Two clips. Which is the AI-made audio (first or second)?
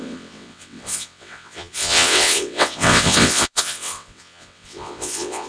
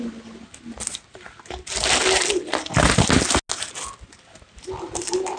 first